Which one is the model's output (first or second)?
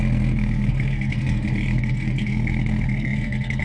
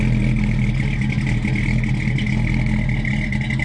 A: first